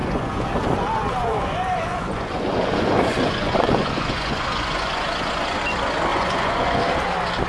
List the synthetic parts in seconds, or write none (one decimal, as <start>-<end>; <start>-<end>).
0.0-0.5; 1.2-5.6; 6.1-6.8